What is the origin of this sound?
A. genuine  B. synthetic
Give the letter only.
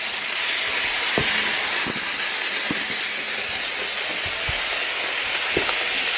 A